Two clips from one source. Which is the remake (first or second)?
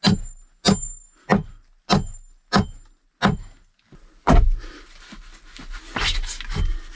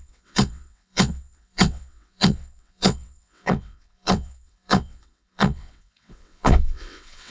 second